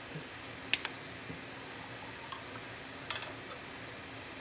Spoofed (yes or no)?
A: no